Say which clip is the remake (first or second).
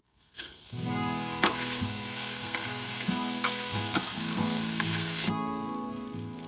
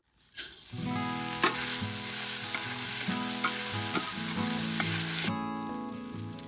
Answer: first